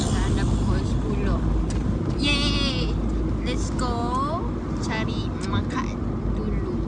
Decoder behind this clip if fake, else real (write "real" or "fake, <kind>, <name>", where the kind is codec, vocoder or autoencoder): real